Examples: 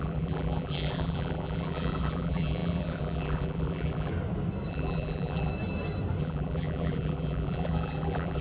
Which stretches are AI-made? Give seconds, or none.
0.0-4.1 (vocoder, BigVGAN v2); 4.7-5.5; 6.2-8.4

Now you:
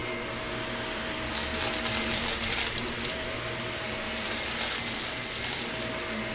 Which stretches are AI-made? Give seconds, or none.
2.1-5.7 (vocoder, BigVGAN v2)

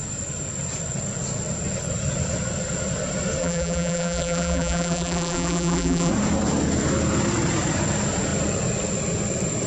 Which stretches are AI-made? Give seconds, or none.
3.4-6.1 (vocoder, BigVGAN v2)

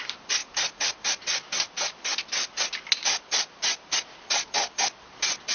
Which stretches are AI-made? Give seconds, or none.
none

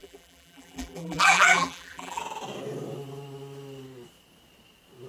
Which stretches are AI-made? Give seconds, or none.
0.0-2.2 (vocoder, BigVGAN v2)